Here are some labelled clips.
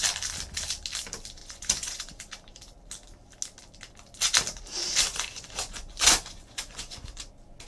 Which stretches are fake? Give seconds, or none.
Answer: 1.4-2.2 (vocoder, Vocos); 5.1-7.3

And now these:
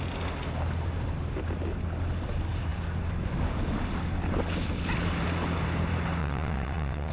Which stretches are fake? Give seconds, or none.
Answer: 6.2-7.1 (vocoder, WaveNeXt)

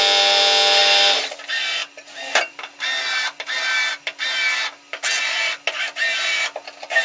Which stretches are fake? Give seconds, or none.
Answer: 1.8-2.3 (vocoder, BigVGAN v2)

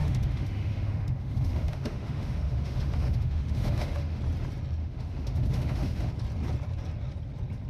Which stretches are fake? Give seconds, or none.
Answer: 0.0-4.2 (autoencoder, DAC-VAE); 4.8-6.1

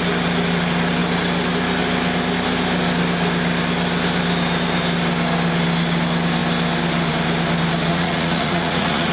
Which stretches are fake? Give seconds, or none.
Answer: 7.9-9.1 (vocoder, Vocos)

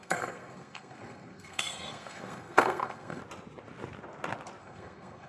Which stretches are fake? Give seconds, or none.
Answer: 0.0-3.2 (codec, SNAC); 4.6-5.3